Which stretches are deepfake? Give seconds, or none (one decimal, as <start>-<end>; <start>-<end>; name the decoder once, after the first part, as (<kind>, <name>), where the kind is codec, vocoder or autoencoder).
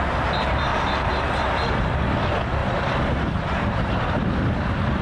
0.7-1.5 (vocoder, BigVGAN v2); 2.6-4.3